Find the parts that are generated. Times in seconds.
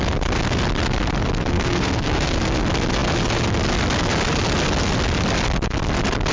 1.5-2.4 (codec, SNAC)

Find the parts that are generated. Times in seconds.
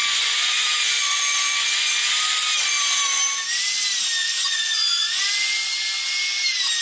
0.0-2.1 (vocoder, Vocos); 4.2-5.2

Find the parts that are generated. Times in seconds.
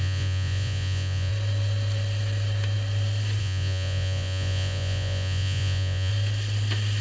0.0-1.3 (vocoder, Vocos); 3.4-6.1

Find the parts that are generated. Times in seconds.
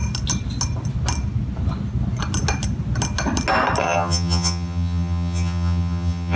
3.8-6.4 (vocoder, HiFi-GAN)